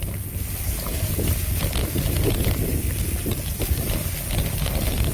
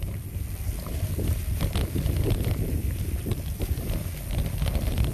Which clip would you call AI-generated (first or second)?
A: second